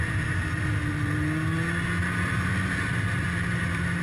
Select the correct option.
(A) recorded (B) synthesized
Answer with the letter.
A